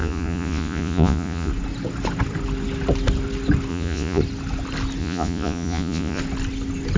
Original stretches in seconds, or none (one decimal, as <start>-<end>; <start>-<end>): 1.5-3.7; 4.2-5.0; 6.2-7.0